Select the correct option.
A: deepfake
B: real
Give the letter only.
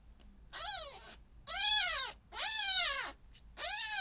B